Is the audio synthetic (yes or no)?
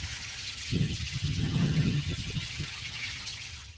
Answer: yes